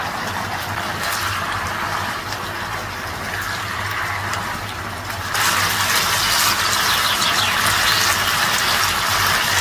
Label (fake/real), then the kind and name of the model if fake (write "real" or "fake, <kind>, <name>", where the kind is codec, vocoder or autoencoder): real